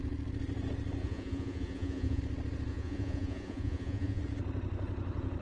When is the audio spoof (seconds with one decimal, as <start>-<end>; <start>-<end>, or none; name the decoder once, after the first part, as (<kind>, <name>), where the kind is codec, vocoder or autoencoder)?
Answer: 1.0-2.2 (vocoder, Vocos); 2.7-4.2